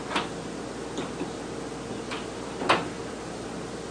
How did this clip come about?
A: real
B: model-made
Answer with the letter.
A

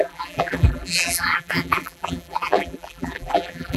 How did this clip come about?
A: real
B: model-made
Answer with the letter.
B